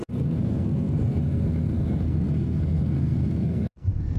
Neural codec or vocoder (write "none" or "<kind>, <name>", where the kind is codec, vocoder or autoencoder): codec, SNAC